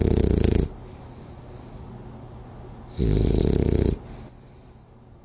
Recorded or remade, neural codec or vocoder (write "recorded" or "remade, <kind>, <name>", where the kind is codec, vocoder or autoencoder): recorded